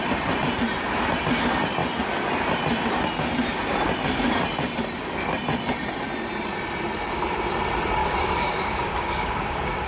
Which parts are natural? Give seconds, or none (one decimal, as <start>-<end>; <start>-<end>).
0.0-8.0